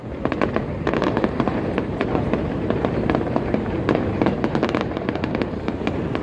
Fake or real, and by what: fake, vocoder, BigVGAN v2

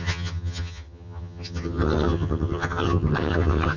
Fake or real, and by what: fake, vocoder, HiFi-GAN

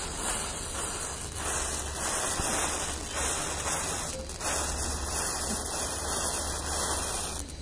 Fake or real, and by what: real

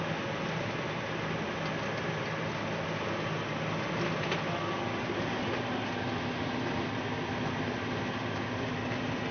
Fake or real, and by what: real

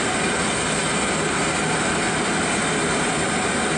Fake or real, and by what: real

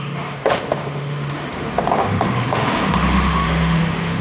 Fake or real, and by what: fake, autoencoder, DAC-VAE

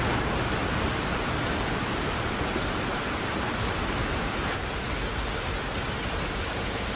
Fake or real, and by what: real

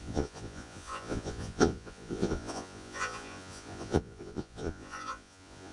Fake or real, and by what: fake, vocoder, Vocos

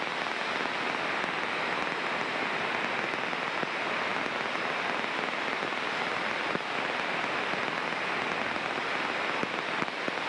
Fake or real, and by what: real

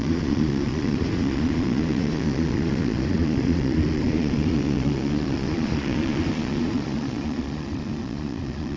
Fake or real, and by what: fake, vocoder, Vocos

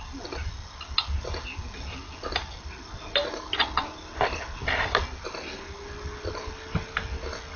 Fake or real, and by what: real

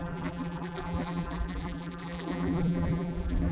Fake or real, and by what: fake, vocoder, BigVGAN v2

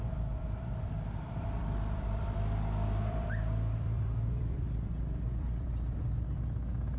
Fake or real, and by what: fake, vocoder, BigVGAN v2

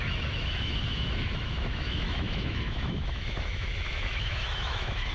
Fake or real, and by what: fake, autoencoder, DAC-VAE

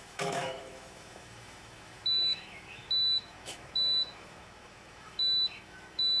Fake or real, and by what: fake, autoencoder, DAC-VAE